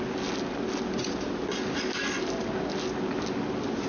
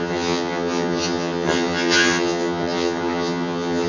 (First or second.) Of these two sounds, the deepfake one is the second